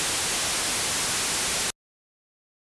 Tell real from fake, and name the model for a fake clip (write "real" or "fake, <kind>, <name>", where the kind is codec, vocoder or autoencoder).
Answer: real